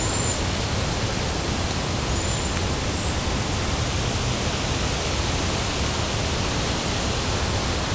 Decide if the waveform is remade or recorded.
recorded